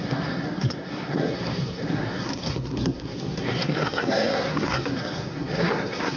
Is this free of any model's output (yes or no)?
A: no